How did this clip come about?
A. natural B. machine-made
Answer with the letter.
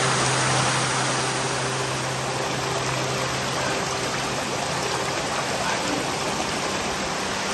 A